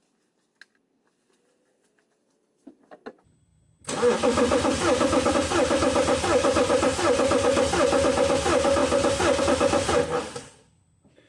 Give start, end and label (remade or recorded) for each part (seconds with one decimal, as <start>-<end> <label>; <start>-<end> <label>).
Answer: 0.0-11.3 recorded

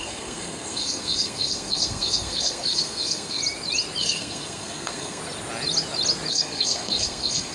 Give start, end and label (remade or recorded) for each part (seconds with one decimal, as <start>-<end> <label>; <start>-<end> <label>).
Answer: 0.0-3.4 remade; 3.4-4.0 recorded; 4.0-5.2 remade; 5.2-6.3 recorded; 6.3-7.5 remade